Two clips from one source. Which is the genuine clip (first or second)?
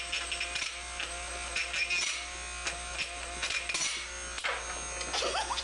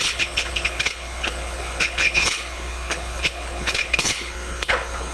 first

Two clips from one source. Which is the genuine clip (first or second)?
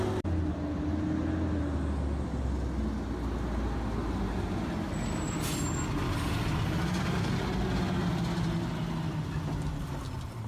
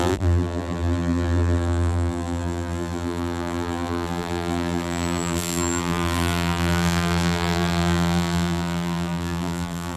first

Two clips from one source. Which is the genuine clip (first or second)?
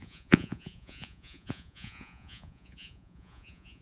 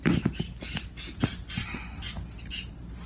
second